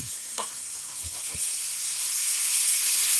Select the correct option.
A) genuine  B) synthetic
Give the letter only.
B